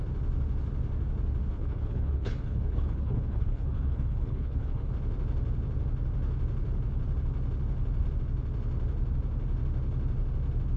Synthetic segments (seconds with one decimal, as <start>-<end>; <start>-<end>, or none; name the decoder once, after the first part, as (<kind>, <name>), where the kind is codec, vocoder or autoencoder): 1.5-4.9 (codec, HILCodec)